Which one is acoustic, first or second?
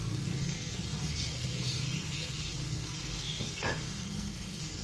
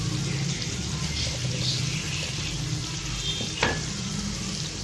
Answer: second